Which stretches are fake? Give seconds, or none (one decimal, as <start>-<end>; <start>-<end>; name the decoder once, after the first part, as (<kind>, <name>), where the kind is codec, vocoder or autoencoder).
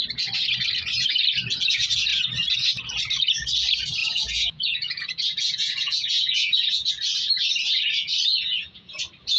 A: 4.0-6.9 (vocoder, Vocos); 8.3-9.0